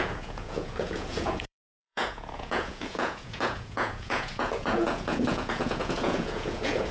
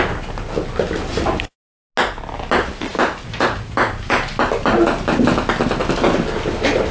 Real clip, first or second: second